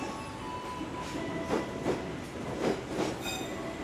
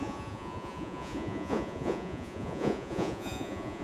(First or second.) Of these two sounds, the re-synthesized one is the second